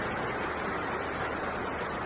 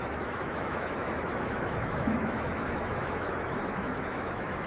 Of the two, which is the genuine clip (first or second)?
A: first